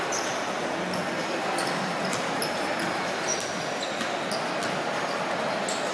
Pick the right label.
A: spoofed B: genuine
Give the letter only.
B